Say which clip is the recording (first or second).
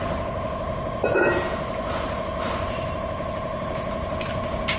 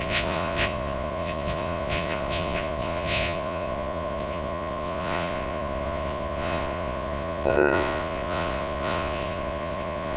first